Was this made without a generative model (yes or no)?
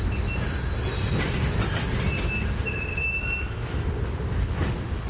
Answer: yes